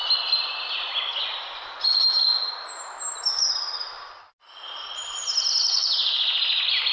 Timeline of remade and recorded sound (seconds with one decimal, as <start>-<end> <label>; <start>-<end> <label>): 0.0-6.9 recorded